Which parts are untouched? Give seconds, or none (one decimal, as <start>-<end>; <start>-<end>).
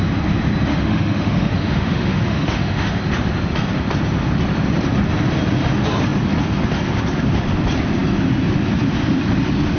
0.0-0.7; 3.0-9.8